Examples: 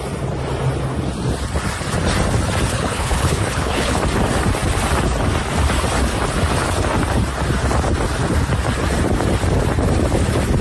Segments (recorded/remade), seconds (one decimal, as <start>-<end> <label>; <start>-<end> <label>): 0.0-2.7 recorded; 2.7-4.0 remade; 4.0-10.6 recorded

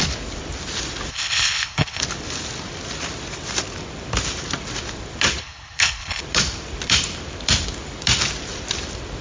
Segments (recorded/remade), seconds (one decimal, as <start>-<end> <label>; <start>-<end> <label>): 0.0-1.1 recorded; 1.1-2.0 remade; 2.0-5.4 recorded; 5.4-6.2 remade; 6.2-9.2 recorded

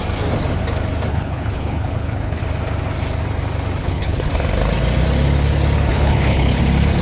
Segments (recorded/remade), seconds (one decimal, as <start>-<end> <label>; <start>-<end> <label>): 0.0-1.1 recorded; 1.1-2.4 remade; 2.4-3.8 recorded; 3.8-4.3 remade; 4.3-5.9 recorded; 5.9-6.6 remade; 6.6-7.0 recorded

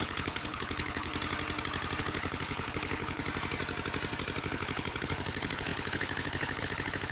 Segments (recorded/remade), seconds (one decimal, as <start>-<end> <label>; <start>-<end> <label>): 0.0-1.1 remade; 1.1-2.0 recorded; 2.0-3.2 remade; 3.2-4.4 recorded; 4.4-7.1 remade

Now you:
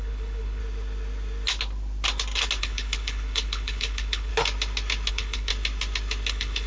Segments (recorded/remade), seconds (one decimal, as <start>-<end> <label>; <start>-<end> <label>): 0.0-0.6 remade; 0.6-2.6 recorded; 2.6-4.3 remade; 4.3-5.1 recorded; 5.1-5.5 remade; 5.5-6.3 recorded; 6.3-6.7 remade

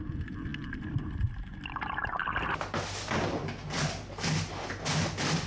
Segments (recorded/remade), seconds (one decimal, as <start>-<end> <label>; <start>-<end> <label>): 0.0-5.5 recorded

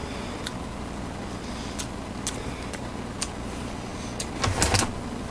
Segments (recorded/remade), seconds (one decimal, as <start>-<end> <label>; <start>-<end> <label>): 0.0-5.3 recorded